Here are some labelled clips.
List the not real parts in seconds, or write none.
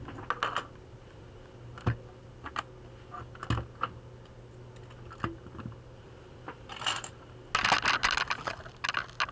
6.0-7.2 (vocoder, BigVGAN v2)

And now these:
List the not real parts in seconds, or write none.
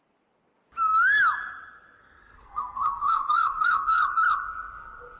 2.0-4.0 (codec, SNAC)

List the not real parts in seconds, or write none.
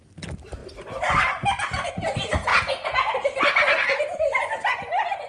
2.5-3.1 (vocoder, Vocos)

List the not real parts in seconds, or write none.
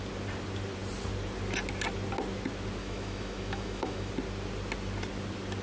2.8-4.1 (autoencoder, DAC-VAE)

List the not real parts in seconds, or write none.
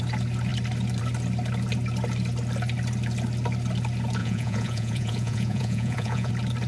4.2-6.3 (vocoder, Vocos)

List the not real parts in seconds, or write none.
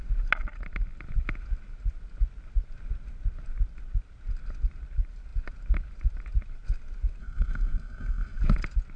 7.2-8.4 (codec, SNAC)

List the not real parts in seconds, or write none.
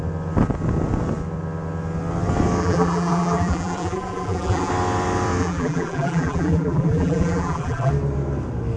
2.6-4.7 (vocoder, BigVGAN v2); 5.4-7.9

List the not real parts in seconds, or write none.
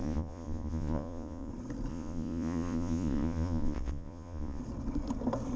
0.0-1.5 (vocoder, Vocos); 1.9-4.6